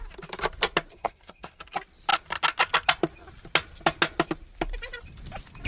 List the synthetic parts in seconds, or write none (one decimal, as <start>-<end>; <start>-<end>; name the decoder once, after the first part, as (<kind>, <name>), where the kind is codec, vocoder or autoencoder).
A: 0.9-1.6 (codec, SNAC)